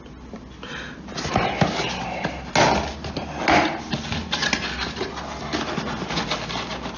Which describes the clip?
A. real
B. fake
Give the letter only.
A